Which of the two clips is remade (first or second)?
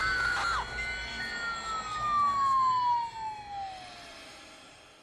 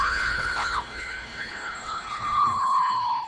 second